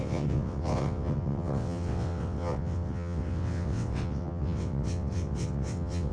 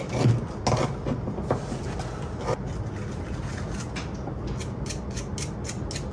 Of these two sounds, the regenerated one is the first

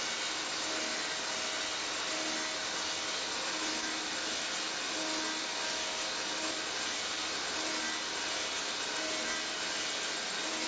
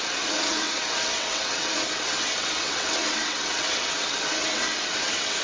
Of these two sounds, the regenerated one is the second